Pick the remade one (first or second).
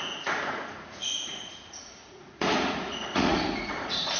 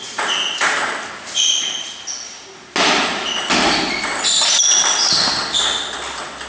first